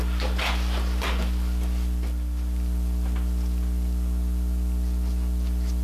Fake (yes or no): no